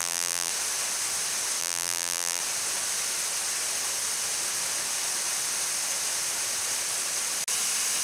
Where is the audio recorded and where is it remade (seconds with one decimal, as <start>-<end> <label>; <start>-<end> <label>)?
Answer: 0.0-0.5 remade; 0.5-1.6 recorded; 1.6-2.4 remade; 2.4-8.0 recorded